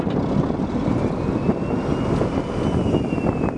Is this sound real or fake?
real